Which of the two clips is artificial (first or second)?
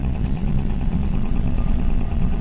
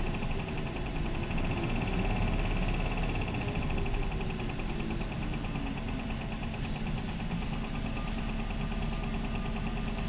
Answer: first